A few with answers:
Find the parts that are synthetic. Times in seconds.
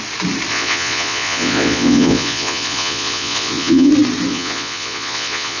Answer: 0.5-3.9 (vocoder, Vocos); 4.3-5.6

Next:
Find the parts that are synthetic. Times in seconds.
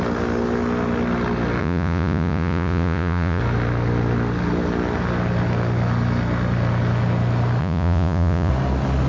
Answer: 1.6-3.4 (vocoder, Vocos); 7.6-8.5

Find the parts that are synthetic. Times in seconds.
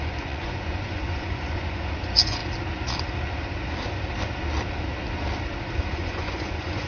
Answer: 0.0-2.4 (vocoder, Vocos); 5.9-6.9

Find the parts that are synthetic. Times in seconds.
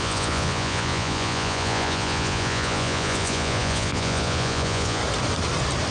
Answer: 0.0-5.0 (vocoder, Vocos)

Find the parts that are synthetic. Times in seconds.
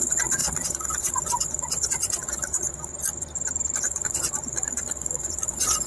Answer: 0.0-2.9 (vocoder, Vocos); 3.8-5.9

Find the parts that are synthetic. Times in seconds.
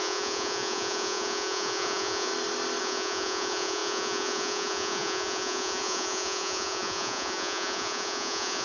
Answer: 0.0-2.3 (vocoder, Vocos); 2.8-8.6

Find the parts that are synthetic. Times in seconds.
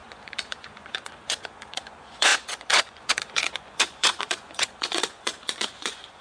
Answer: 0.0-6.2 (vocoder, Vocos)